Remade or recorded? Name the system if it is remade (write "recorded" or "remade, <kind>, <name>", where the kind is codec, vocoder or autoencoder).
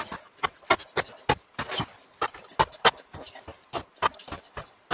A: recorded